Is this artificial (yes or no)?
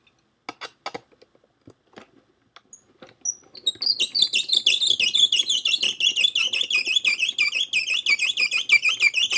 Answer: no